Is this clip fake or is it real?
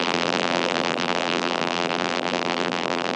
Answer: fake